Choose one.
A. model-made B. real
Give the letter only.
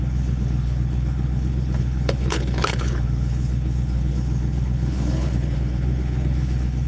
A